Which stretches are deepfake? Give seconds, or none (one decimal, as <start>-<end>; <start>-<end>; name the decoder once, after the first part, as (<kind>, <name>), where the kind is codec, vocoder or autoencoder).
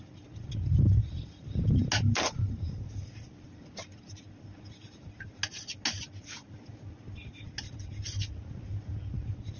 none